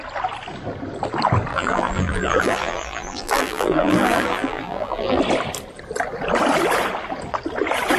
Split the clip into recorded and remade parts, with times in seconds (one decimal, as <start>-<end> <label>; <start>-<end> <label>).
0.0-1.5 recorded; 1.5-5.2 remade; 5.2-8.0 recorded